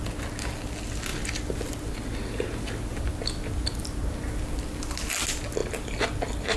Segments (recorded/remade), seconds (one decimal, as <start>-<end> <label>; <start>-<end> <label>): 0.0-6.6 recorded

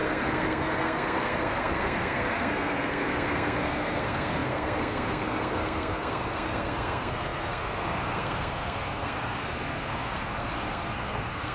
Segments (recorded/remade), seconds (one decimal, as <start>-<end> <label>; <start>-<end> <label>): 0.0-11.5 remade

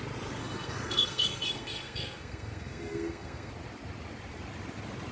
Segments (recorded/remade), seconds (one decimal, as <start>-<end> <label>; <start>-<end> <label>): 0.0-0.4 recorded; 0.4-3.5 remade; 3.5-5.1 recorded

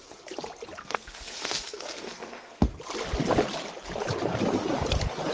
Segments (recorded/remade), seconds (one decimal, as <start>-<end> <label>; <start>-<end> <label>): 0.0-0.8 recorded; 0.8-2.7 remade; 2.7-5.3 recorded

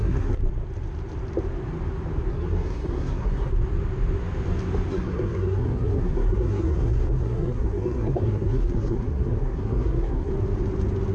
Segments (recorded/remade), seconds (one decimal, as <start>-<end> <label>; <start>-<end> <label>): 0.0-0.4 remade; 0.4-2.3 recorded; 2.3-3.5 remade; 3.5-4.9 recorded; 4.9-10.3 remade; 10.3-11.1 recorded